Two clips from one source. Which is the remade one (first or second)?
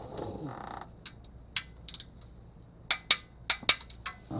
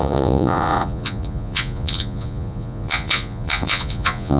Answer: second